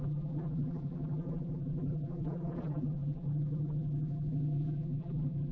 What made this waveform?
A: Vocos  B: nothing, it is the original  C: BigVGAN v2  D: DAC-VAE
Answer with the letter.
C